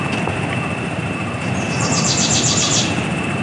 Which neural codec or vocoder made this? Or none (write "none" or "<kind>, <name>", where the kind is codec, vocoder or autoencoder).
none